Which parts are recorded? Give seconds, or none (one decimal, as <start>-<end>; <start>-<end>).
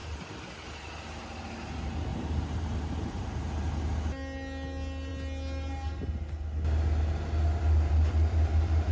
1.0-2.1; 3.2-8.9